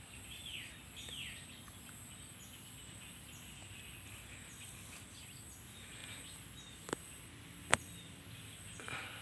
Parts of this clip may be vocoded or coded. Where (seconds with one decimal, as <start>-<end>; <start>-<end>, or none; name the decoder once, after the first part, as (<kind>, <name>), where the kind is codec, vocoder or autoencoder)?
none